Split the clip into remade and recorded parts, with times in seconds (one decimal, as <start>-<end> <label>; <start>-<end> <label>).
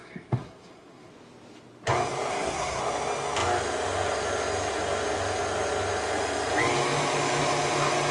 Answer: 0.0-1.1 remade; 1.1-2.3 recorded; 2.3-2.8 remade; 2.8-8.1 recorded